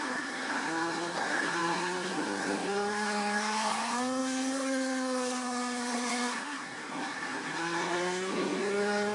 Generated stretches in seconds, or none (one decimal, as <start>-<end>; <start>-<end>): 0.0-9.1